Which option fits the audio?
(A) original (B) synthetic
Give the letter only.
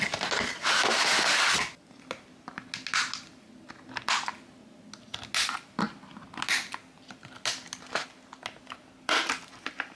A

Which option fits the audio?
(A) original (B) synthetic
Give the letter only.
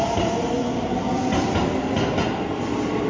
A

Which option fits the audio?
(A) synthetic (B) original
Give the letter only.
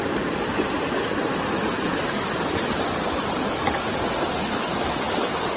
B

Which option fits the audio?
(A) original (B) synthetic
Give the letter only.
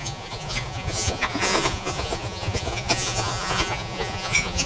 B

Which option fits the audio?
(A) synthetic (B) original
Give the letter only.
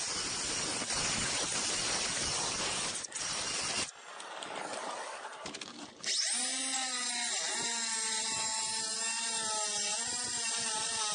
B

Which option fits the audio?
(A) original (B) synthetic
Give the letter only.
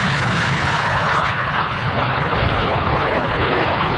B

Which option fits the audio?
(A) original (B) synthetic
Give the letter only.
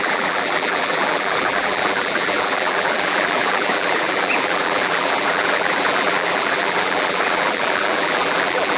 B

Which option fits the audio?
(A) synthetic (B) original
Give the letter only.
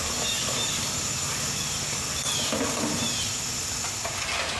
B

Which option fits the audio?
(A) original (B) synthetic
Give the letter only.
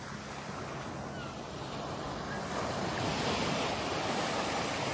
A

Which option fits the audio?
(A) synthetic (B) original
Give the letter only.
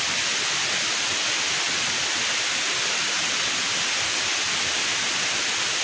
B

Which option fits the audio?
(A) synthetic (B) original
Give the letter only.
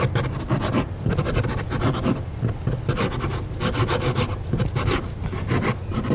B